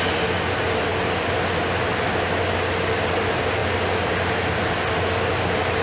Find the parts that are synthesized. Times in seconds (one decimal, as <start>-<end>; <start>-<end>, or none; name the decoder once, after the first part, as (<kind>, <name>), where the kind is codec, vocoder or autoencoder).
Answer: none